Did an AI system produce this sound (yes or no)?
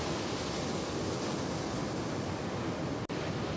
no